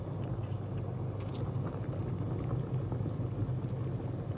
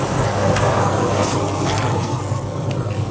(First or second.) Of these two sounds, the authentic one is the first